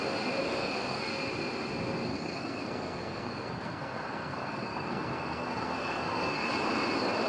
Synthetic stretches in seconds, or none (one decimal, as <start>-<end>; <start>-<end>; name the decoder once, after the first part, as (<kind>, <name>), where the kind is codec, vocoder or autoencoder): 0.4-1.1 (codec, SNAC); 2.1-6.5